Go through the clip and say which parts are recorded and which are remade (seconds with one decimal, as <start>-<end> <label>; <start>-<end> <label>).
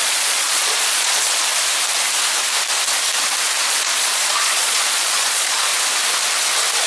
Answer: 0.0-1.5 remade; 1.5-3.6 recorded; 3.6-5.7 remade; 5.7-6.9 recorded